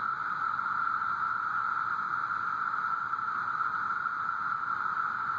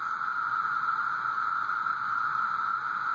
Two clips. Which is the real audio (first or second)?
first